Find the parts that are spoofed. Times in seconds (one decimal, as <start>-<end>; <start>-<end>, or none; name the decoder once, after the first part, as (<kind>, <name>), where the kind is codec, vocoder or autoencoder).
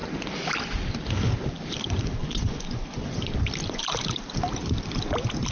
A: 2.2-3.3 (vocoder, Vocos)